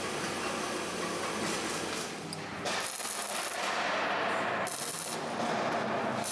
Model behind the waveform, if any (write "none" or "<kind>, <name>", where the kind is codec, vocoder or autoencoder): none